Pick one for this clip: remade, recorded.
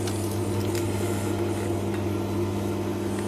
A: recorded